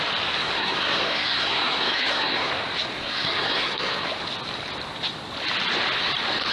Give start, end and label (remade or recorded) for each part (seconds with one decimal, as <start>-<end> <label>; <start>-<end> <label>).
0.0-0.4 recorded; 0.4-2.5 remade; 2.5-3.0 recorded; 3.0-4.1 remade; 4.1-6.5 recorded